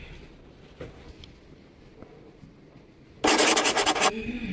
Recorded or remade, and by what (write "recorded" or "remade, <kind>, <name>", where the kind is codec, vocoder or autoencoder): recorded